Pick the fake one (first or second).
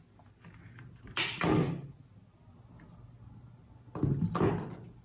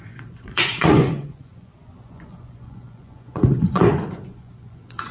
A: second